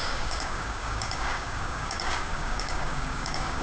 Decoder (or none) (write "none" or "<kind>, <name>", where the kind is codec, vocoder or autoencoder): codec, DAC